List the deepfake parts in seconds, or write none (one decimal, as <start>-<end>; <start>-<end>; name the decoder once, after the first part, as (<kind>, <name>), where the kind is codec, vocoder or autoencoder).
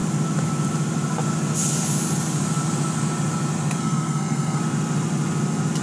3.8-4.6 (codec, SNAC)